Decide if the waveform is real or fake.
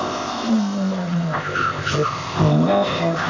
fake